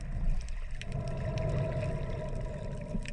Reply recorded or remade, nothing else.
recorded